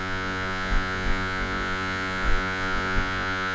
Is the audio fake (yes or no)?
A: yes